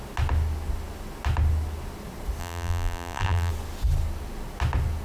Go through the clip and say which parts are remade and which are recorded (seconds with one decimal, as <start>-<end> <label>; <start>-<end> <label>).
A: 0.0-2.4 recorded; 2.4-3.5 remade; 3.5-5.0 recorded